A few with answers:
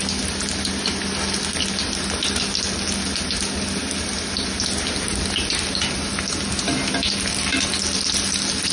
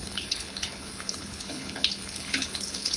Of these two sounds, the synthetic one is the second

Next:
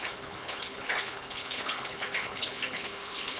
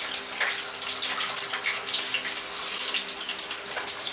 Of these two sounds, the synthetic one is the first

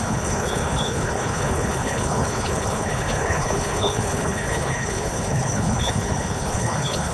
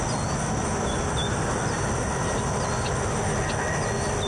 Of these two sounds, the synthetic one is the first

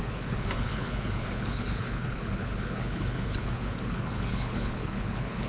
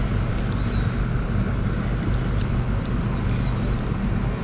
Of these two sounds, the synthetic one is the first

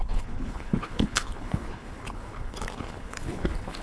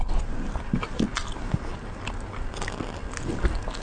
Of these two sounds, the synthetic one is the first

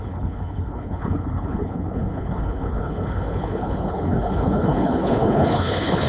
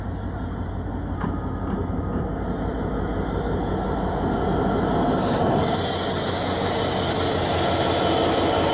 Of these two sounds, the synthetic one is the first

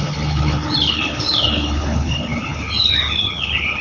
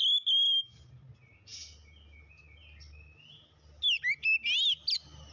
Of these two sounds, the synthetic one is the first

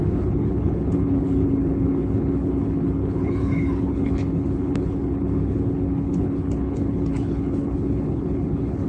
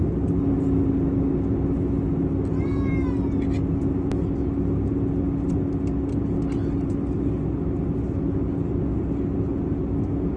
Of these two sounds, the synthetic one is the first